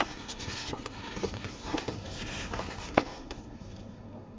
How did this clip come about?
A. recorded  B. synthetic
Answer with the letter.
B